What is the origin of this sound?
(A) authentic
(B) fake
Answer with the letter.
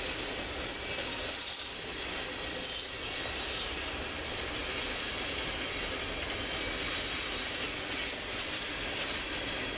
A